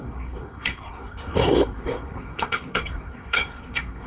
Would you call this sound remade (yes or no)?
yes